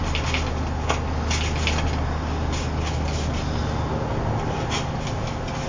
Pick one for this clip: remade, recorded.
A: recorded